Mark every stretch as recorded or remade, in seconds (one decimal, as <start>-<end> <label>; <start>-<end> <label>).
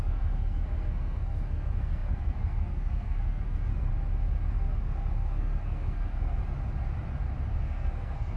0.0-3.9 remade; 3.9-4.5 recorded; 4.5-6.4 remade; 6.4-7.6 recorded; 7.6-8.4 remade